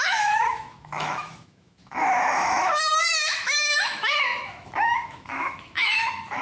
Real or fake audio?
fake